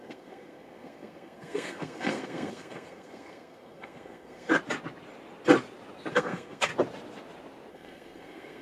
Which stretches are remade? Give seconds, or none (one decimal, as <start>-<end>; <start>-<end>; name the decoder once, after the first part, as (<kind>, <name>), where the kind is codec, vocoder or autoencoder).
0.0-4.5 (codec, SNAC); 6.1-6.7; 7.7-8.6